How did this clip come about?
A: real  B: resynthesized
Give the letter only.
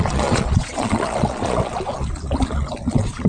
B